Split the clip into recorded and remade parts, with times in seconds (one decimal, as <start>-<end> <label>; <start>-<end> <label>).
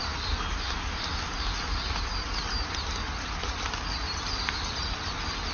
0.0-5.5 recorded